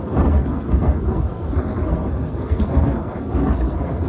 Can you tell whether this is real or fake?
fake